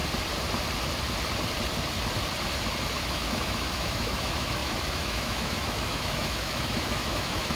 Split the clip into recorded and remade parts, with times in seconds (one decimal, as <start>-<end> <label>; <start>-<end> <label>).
0.0-3.1 recorded; 3.1-7.6 remade